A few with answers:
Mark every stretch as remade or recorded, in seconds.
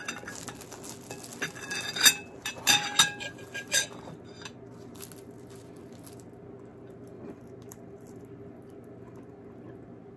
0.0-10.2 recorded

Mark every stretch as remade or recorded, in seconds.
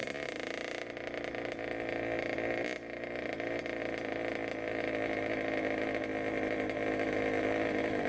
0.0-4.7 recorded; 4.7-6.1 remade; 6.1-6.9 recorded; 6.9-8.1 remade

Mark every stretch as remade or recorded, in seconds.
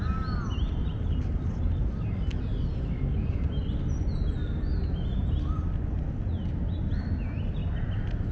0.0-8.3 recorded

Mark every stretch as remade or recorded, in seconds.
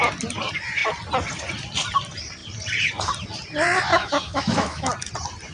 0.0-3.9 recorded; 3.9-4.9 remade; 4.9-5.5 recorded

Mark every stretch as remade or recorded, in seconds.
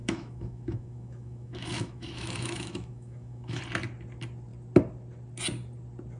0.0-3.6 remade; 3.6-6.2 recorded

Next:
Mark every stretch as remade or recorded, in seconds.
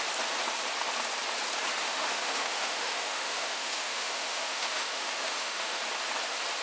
0.0-1.8 recorded; 1.8-5.8 remade; 5.8-6.6 recorded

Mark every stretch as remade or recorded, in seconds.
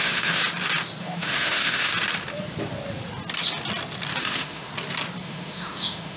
0.0-0.4 remade; 0.4-1.0 recorded; 1.0-1.9 remade; 1.9-4.2 recorded; 4.2-4.7 remade; 4.7-5.2 recorded; 5.2-6.2 remade